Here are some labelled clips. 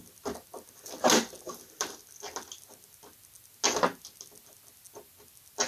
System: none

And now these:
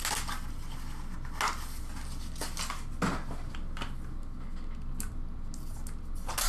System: none